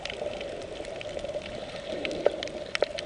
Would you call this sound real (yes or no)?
yes